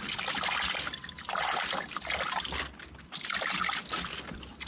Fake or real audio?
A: real